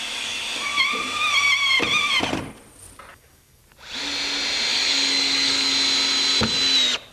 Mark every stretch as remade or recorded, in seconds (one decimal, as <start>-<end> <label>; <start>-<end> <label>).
0.0-0.7 remade; 0.7-3.1 recorded; 3.1-3.6 remade; 3.6-4.7 recorded; 4.7-5.7 remade; 5.7-7.1 recorded